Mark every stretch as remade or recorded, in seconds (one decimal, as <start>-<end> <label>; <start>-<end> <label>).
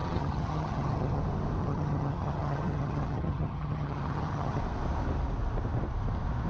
0.0-1.2 remade; 1.2-1.6 recorded; 1.6-4.6 remade; 4.6-6.5 recorded